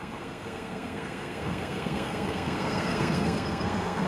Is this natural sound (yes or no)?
no